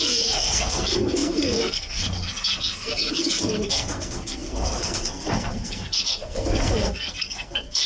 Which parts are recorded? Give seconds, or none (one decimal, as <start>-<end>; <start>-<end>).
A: none